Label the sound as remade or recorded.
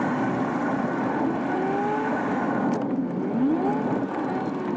recorded